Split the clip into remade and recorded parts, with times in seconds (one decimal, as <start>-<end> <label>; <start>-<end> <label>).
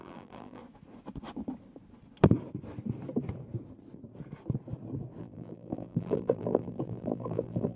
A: 0.0-0.6 remade; 0.6-5.2 recorded; 5.2-7.8 remade